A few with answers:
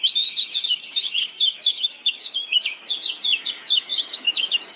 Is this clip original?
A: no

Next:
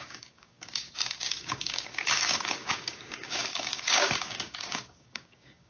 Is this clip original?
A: no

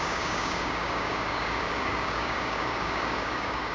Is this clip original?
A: no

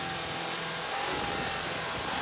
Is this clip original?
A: yes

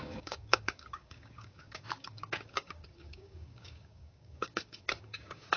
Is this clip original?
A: no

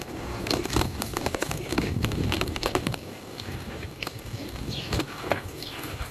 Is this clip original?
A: no